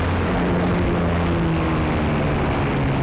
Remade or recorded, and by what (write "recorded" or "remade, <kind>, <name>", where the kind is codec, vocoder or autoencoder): recorded